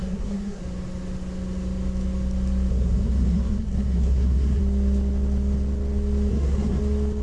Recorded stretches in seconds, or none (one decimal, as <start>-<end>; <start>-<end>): 0.6-2.7; 4.6-6.3; 6.8-7.2